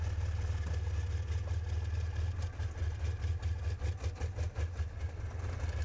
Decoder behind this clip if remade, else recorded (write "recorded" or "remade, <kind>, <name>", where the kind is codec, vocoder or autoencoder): recorded